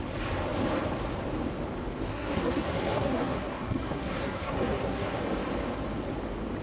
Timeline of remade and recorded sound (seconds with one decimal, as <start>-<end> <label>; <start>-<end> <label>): 0.0-2.1 recorded; 2.1-5.2 remade; 5.2-6.6 recorded